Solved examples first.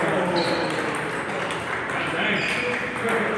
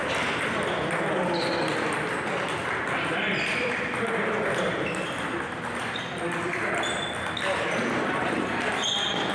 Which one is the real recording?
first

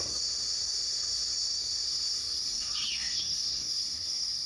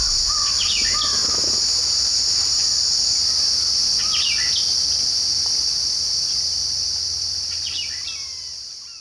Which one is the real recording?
second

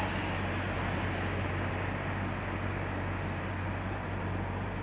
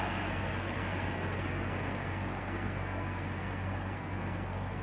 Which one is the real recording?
first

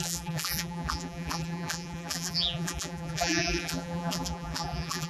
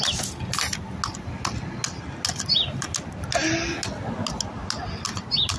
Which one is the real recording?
second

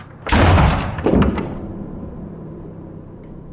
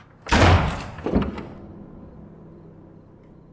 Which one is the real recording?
second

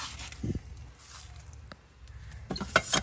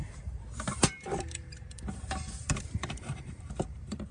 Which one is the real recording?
first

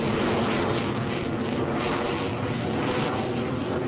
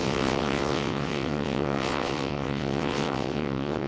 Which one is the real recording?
first